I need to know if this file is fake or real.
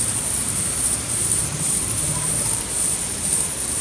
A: fake